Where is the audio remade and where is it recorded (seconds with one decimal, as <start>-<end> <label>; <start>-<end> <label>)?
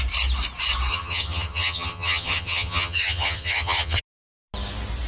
0.0-0.9 recorded; 0.9-4.0 remade; 4.0-5.1 recorded